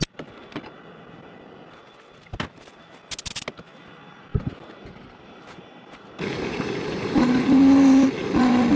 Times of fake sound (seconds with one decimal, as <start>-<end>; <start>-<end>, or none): 4.3-7.6